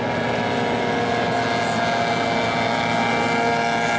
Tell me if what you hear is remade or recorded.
recorded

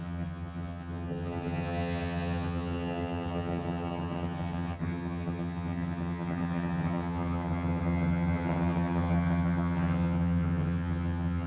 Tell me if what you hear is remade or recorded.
remade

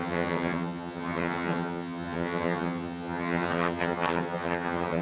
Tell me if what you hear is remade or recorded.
remade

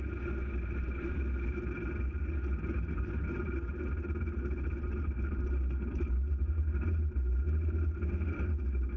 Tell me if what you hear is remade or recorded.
recorded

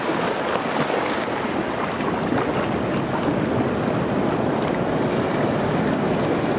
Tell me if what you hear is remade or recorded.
recorded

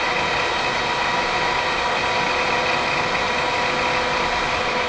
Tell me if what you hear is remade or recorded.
recorded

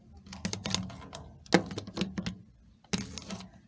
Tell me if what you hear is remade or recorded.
recorded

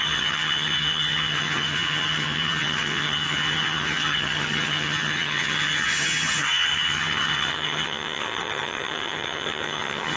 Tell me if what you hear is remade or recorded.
remade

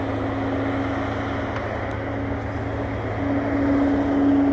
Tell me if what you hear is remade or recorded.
recorded